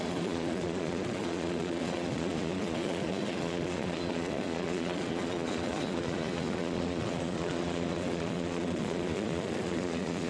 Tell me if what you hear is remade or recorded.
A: remade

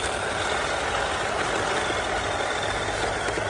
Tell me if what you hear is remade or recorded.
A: recorded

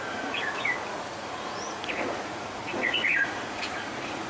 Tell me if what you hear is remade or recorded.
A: remade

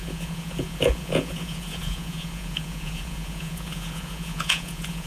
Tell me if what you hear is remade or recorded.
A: remade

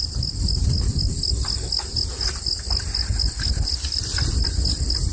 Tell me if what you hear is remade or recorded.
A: recorded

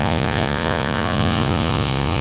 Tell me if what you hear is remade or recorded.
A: remade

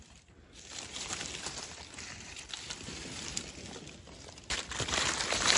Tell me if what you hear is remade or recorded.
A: recorded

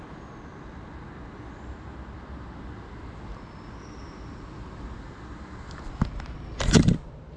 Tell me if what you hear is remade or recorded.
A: recorded